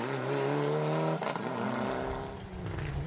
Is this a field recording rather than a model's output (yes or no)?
yes